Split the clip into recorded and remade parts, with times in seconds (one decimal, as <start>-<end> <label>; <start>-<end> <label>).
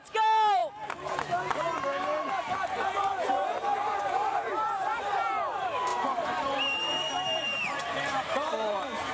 0.0-0.6 remade; 0.6-4.0 recorded; 4.0-9.1 remade